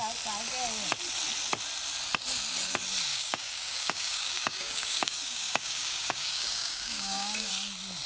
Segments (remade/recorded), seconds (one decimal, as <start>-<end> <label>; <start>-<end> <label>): 0.0-3.1 recorded; 3.1-7.5 remade; 7.5-8.1 recorded